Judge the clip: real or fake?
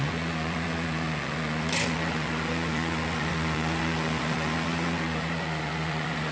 fake